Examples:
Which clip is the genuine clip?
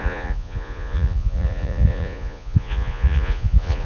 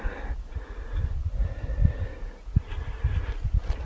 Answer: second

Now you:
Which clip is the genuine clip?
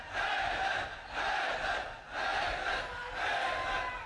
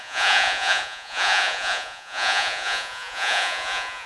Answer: first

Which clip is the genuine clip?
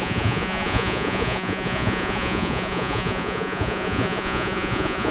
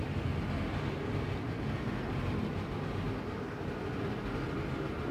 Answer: second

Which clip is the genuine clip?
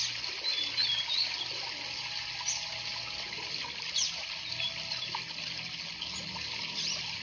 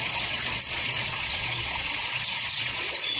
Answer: first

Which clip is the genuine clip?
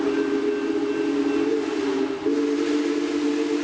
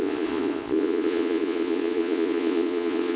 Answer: first